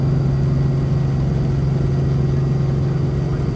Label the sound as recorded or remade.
recorded